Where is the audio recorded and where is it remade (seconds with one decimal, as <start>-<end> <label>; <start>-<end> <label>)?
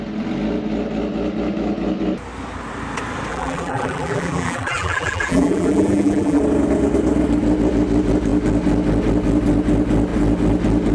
0.0-3.3 recorded; 3.3-6.4 remade; 6.4-10.9 recorded